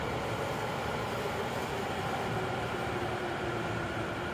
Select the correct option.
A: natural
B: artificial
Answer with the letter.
A